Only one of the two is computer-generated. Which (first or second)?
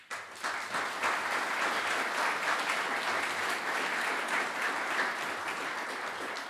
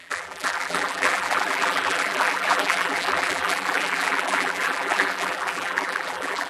second